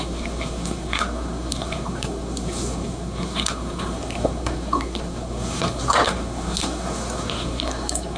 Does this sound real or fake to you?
fake